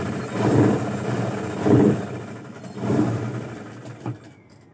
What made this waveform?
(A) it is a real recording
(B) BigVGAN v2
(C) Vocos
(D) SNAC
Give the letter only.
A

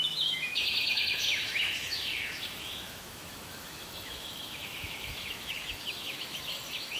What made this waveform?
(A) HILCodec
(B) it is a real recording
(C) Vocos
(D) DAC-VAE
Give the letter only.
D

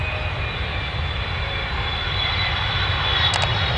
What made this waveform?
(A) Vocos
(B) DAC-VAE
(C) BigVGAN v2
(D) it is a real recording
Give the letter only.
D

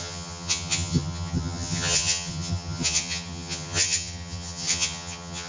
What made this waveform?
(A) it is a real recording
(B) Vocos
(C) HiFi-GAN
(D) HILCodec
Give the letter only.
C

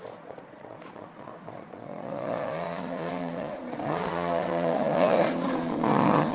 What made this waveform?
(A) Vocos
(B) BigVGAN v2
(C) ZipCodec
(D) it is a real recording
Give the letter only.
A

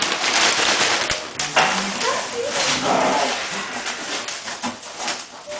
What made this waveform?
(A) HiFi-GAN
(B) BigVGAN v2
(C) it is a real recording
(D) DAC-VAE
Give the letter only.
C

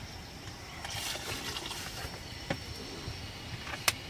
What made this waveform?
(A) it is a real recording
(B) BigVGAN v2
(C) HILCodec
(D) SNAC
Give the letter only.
A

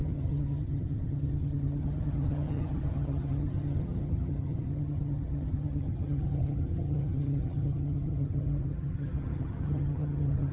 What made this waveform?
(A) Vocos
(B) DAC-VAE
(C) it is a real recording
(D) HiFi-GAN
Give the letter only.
D